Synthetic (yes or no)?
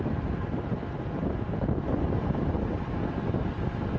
no